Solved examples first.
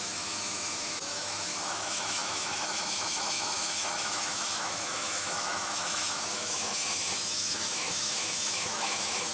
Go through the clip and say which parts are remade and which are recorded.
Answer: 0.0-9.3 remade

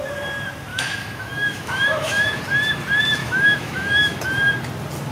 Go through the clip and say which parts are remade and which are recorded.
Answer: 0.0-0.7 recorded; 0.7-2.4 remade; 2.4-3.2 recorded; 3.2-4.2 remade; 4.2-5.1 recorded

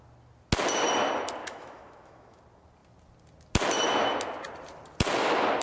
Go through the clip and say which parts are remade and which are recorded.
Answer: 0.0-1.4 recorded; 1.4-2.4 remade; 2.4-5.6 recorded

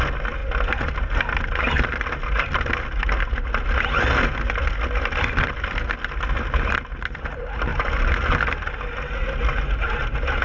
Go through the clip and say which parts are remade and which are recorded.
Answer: 0.0-10.4 recorded

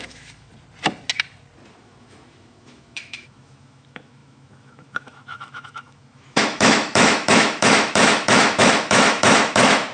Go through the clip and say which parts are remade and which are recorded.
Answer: 0.0-0.5 remade; 0.5-1.7 recorded; 1.7-9.9 remade

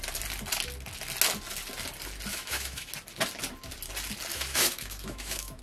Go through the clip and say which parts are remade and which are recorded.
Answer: 0.0-2.3 recorded; 2.3-2.9 remade; 2.9-4.3 recorded; 4.3-5.6 remade

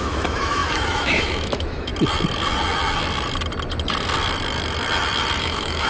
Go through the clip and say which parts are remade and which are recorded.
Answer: 0.0-1.9 remade; 1.9-5.4 recorded; 5.4-5.9 remade